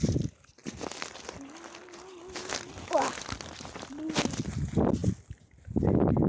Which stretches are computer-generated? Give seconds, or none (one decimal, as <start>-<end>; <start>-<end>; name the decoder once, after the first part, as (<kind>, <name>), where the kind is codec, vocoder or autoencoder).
none